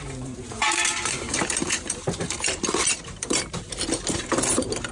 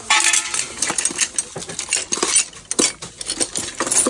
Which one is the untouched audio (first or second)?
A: second